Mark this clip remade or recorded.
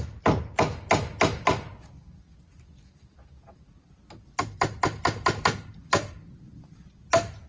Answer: recorded